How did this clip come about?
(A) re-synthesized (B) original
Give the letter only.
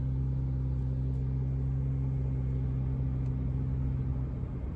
B